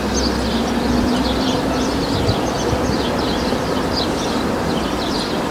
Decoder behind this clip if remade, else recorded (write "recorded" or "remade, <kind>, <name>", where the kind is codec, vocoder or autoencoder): recorded